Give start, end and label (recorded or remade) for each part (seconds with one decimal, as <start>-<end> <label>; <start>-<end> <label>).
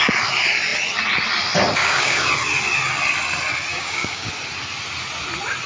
0.0-1.8 recorded; 1.8-2.3 remade; 2.3-3.7 recorded; 3.7-4.3 remade; 4.3-5.7 recorded